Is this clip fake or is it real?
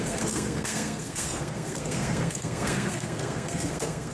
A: fake